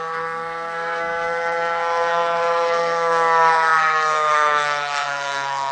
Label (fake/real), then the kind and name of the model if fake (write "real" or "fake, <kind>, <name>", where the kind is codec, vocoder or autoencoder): fake, codec, SNAC